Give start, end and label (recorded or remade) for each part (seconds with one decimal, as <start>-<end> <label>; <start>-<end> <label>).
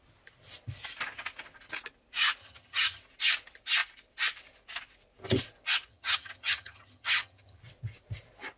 0.0-2.4 recorded; 2.4-3.0 remade; 3.0-5.9 recorded; 5.9-7.6 remade; 7.6-8.6 recorded